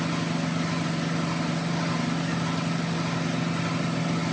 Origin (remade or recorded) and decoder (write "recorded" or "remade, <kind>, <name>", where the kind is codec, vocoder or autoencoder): recorded